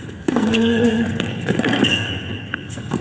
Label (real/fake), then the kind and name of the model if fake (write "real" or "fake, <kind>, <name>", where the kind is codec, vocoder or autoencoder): fake, codec, SNAC